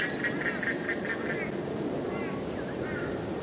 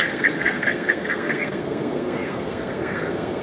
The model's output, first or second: second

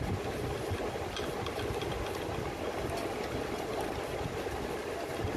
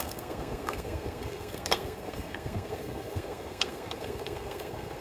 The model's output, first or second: second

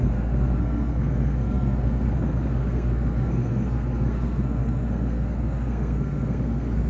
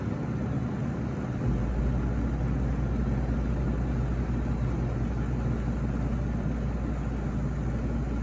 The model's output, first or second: first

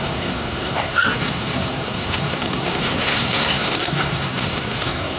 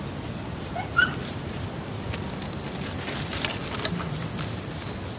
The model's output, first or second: first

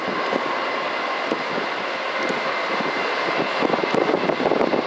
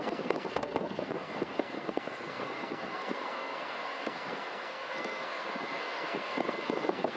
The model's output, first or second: second